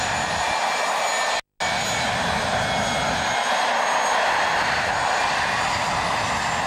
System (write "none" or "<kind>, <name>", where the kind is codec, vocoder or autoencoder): none